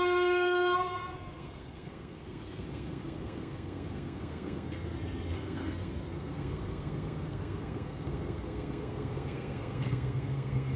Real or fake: fake